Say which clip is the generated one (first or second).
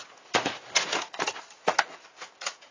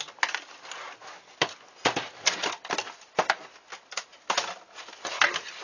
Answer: first